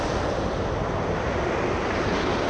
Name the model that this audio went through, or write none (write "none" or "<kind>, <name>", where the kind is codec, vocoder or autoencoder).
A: none